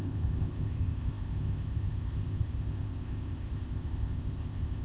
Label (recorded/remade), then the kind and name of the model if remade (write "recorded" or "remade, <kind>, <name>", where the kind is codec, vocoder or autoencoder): remade, codec, ZipCodec